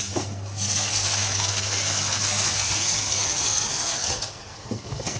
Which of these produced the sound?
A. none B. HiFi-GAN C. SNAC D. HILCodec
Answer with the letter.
C